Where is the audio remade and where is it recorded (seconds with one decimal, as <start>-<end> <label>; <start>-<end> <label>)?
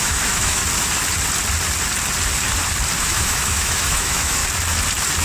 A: 0.0-0.6 remade; 0.6-3.0 recorded; 3.0-4.4 remade; 4.4-5.2 recorded